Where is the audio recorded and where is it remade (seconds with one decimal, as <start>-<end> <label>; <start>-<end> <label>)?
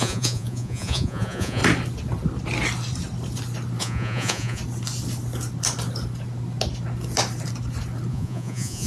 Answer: 0.0-1.6 remade; 1.6-3.8 recorded; 3.8-4.6 remade; 4.6-8.1 recorded; 8.1-8.9 remade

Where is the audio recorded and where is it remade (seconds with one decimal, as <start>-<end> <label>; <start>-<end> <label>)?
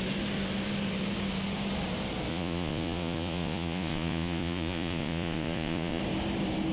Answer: 0.0-2.3 recorded; 2.3-6.0 remade; 6.0-6.7 recorded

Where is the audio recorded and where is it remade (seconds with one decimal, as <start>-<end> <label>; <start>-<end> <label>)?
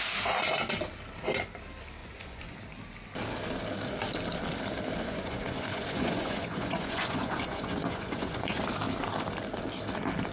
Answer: 0.0-2.0 recorded; 2.0-2.6 remade; 2.6-5.1 recorded; 5.1-8.6 remade; 8.6-10.3 recorded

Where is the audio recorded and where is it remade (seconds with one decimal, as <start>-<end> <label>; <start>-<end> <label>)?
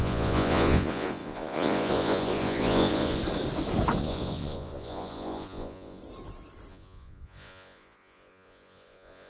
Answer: 0.0-3.2 remade; 3.2-4.0 recorded; 4.0-6.0 remade; 6.0-6.7 recorded; 6.7-9.3 remade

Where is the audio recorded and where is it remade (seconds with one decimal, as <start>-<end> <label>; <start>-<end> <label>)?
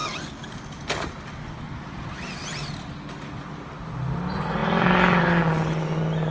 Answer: 0.0-6.3 recorded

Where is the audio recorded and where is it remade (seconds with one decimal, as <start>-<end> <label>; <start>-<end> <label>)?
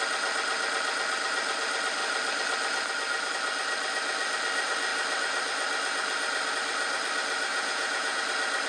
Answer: 0.0-7.5 recorded; 7.5-8.2 remade; 8.2-8.7 recorded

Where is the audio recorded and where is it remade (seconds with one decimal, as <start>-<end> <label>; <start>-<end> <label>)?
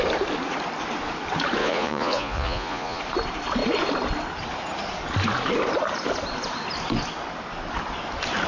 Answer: 0.0-1.6 recorded; 1.6-3.0 remade; 3.0-8.5 recorded